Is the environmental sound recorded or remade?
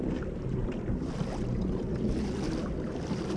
recorded